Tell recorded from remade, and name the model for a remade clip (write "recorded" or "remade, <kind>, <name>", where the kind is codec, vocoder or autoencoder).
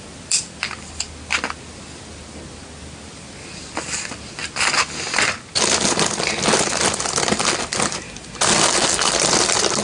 recorded